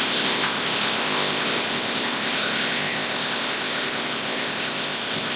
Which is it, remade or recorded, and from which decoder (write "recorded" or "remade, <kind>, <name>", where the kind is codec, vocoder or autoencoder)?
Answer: remade, codec, ZipCodec